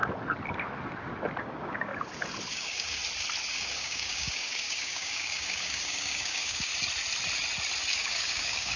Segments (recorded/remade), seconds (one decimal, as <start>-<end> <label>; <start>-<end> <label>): 0.0-1.4 recorded; 1.4-1.9 remade; 1.9-2.5 recorded; 2.5-3.0 remade; 3.0-3.5 recorded; 3.5-6.7 remade; 6.7-7.9 recorded; 7.9-8.8 remade